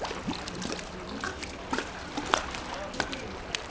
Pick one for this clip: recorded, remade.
recorded